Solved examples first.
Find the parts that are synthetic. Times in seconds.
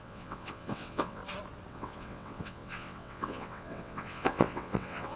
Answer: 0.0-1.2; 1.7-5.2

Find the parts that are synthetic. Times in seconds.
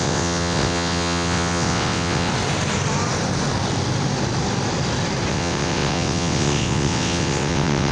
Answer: 0.0-2.3; 5.3-7.9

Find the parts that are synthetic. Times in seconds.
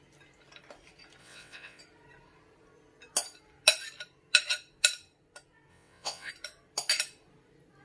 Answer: 1.2-1.8; 5.7-6.3